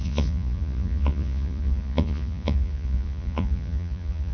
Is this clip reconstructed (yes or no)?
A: yes